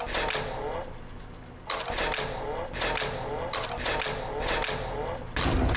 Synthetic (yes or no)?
no